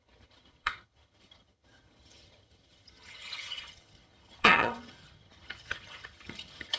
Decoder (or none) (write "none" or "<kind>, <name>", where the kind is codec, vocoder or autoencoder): vocoder, HiFi-GAN